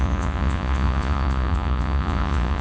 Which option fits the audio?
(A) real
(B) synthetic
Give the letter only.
B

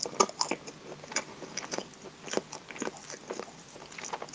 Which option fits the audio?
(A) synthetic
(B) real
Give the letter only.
B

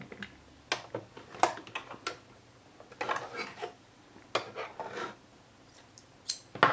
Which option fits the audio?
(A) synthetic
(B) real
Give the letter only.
B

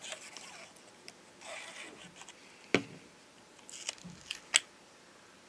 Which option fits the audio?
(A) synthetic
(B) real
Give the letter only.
B